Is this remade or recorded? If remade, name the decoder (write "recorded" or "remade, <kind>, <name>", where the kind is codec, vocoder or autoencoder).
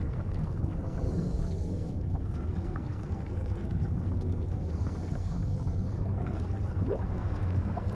remade, codec, SNAC